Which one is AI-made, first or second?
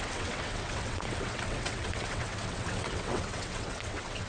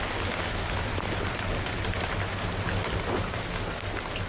first